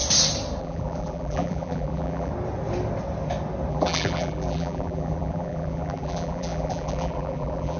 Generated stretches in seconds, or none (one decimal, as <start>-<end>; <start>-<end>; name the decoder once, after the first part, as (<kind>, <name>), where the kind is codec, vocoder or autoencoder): 0.6-2.3 (vocoder, BigVGAN v2); 3.7-7.8